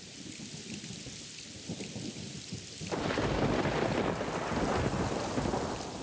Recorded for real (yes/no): no